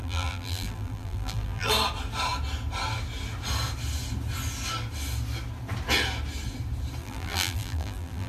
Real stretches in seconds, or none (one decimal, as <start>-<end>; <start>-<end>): 1.7-7.0